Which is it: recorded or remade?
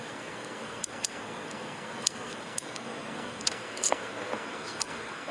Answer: remade